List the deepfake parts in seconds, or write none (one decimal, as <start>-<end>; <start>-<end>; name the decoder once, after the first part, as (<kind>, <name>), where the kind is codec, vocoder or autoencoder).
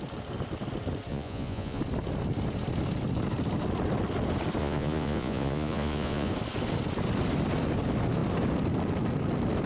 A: 1.1-1.8 (vocoder, Vocos); 4.6-6.3